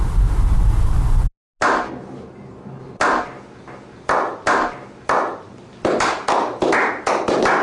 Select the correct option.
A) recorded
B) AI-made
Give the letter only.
A